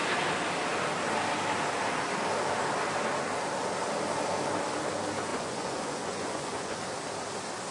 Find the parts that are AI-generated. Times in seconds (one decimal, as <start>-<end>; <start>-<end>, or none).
5.3-6.8